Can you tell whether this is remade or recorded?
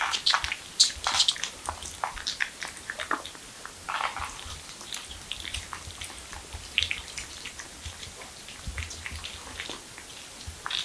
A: recorded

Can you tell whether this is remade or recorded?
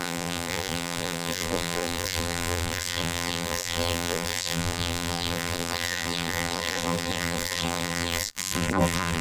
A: remade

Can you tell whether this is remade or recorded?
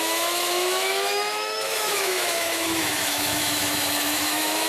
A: remade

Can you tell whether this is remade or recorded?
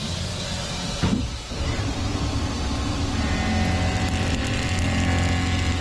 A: recorded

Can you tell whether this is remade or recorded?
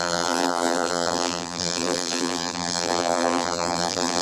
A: remade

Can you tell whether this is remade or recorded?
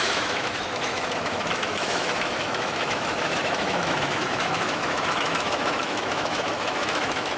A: remade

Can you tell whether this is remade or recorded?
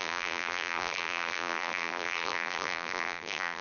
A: remade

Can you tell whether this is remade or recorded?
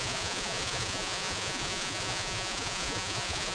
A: remade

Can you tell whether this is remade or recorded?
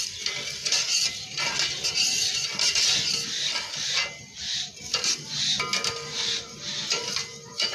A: recorded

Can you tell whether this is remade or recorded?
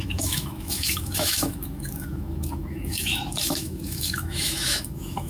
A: remade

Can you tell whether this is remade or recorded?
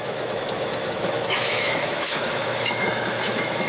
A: remade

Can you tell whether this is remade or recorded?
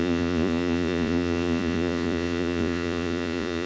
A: remade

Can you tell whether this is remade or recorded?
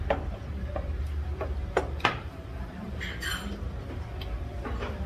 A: remade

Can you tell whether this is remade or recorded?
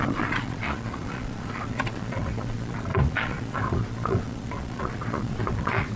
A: remade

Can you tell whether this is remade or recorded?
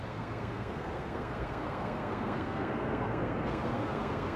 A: remade